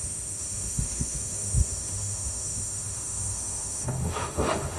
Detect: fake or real fake